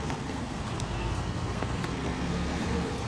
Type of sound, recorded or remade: remade